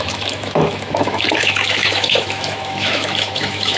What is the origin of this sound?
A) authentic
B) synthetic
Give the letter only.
B